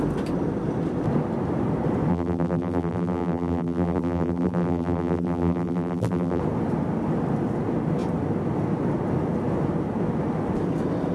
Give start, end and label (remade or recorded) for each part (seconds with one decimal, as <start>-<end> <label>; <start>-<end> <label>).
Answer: 0.0-2.1 recorded; 2.1-6.4 remade; 6.4-11.1 recorded